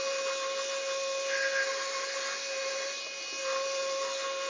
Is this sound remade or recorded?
recorded